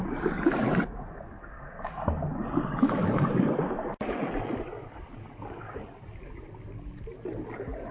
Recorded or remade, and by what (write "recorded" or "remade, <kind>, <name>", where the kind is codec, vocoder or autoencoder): recorded